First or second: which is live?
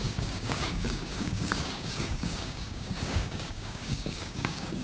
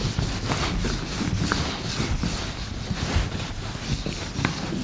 second